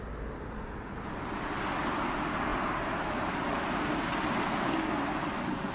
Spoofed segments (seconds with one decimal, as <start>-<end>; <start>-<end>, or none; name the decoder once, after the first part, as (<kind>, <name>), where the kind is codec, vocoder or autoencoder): none